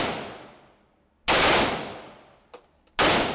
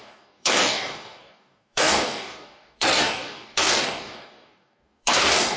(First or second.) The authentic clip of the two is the first